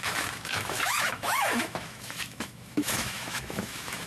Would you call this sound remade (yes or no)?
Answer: yes